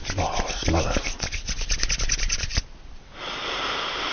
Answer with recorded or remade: remade